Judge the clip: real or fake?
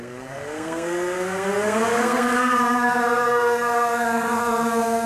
fake